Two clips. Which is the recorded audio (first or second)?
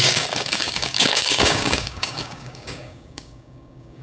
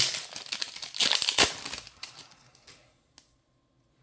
second